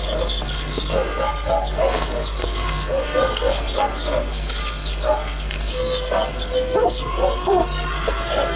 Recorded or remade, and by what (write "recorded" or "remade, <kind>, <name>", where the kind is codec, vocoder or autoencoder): remade, codec, SNAC